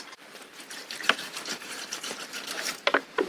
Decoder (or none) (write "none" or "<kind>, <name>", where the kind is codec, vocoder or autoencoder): vocoder, BigVGAN v2